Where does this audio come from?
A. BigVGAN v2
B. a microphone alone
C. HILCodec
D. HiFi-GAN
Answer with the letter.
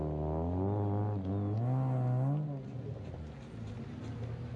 B